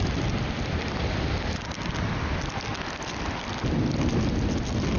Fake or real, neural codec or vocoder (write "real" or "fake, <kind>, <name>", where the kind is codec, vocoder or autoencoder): real